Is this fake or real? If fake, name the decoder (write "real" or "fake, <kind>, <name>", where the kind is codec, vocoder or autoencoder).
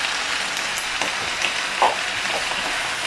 real